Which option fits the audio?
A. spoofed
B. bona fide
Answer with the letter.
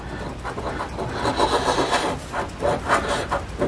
B